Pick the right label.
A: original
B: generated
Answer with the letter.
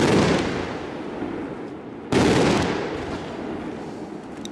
A